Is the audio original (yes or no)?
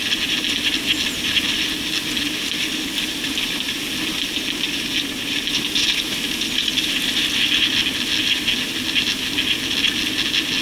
yes